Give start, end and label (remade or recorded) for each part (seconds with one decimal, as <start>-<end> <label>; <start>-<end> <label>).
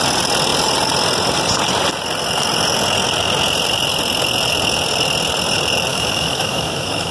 0.0-5.9 recorded; 5.9-7.1 remade